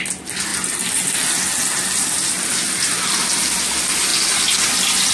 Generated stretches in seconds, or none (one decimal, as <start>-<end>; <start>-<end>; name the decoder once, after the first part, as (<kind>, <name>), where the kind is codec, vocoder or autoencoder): none